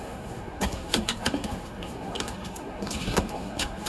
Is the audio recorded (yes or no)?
no